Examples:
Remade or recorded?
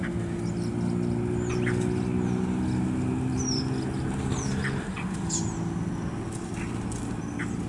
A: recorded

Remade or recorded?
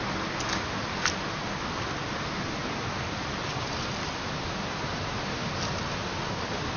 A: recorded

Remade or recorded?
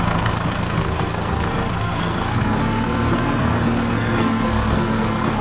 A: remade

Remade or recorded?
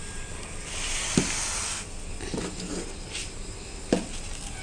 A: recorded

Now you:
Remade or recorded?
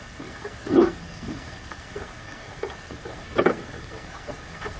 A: remade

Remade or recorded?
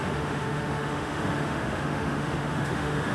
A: remade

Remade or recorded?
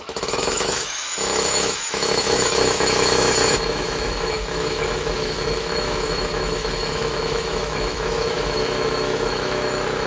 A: remade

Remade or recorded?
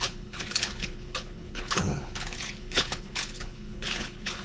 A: remade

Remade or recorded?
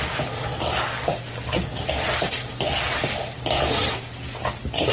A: recorded